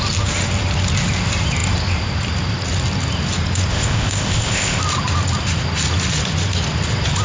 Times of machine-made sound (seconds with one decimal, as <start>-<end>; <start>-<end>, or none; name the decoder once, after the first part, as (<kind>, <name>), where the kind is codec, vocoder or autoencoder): 3.7-4.8 (codec, ZipCodec)